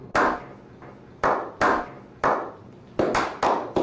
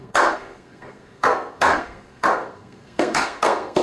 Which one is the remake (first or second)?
second